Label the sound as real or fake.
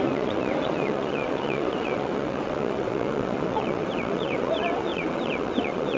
fake